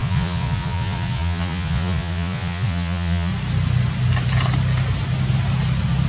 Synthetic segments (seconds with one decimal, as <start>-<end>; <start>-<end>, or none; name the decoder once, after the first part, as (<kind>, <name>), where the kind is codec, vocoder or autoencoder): 0.0-3.3 (vocoder, Vocos)